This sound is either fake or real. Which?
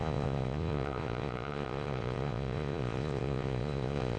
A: fake